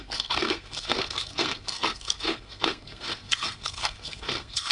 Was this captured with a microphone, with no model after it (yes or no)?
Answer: no